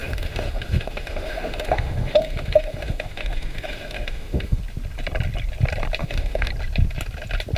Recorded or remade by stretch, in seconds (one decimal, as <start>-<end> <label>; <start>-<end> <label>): 0.0-4.6 remade; 4.6-6.0 recorded; 6.0-6.5 remade; 6.5-7.6 recorded